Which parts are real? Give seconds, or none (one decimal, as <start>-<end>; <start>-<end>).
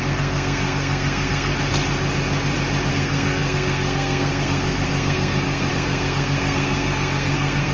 1.5-2.9